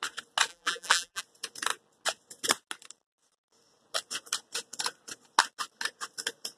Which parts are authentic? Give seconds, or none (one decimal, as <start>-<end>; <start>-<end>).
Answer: 0.0-0.5; 1.2-6.6